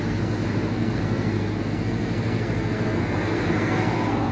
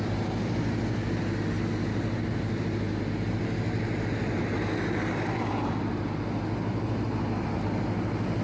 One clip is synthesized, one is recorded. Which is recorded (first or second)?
second